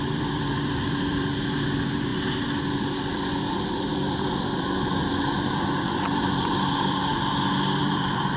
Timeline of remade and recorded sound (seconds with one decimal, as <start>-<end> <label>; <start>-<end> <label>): 0.0-2.1 remade; 2.1-2.7 recorded; 2.7-7.1 remade; 7.1-7.8 recorded; 7.8-8.4 remade